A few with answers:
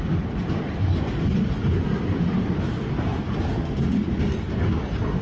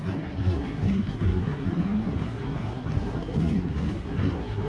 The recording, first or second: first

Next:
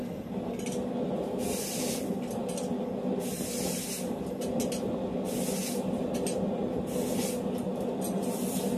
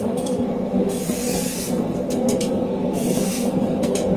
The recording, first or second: first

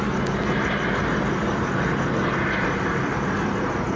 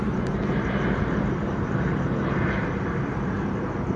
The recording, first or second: first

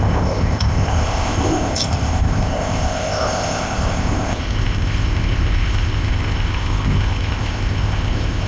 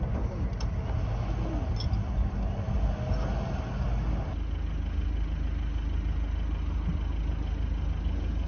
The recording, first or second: second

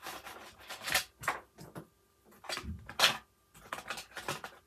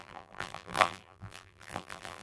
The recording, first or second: first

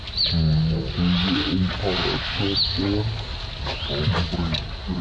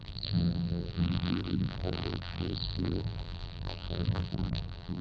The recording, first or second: first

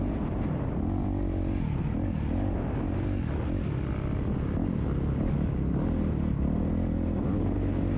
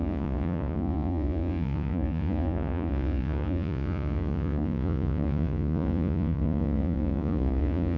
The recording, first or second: first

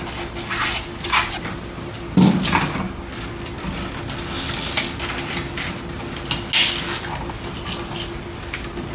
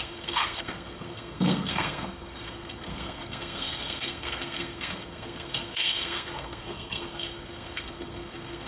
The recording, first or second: first